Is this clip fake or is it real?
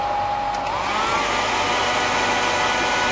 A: real